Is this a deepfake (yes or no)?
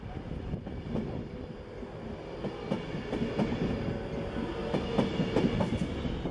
no